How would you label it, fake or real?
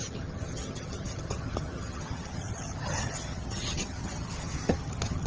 fake